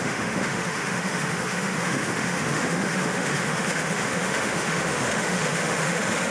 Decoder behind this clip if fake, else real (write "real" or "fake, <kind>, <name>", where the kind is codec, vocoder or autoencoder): fake, autoencoder, DAC-VAE